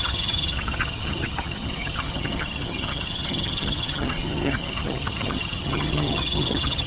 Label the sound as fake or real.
fake